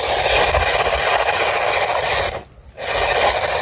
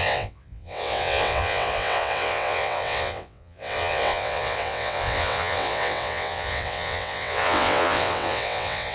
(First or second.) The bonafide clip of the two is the first